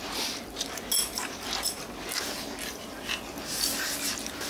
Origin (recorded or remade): recorded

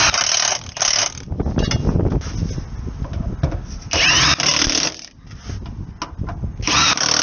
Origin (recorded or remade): recorded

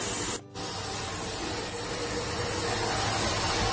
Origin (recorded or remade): recorded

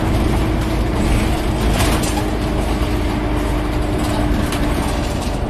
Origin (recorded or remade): recorded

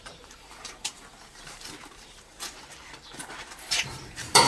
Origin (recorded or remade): remade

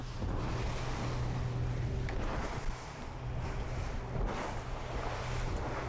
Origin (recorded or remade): recorded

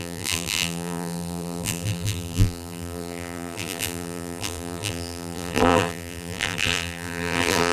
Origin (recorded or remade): remade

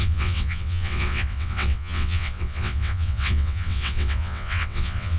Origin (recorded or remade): remade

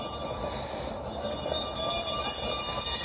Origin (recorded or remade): recorded